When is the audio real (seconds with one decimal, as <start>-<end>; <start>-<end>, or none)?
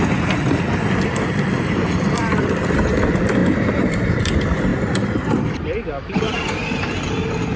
0.0-3.4; 4.2-7.6